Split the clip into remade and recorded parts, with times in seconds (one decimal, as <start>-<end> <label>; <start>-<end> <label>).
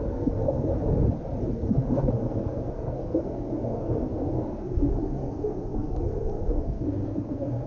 0.0-0.7 remade; 0.7-1.5 recorded; 1.5-7.7 remade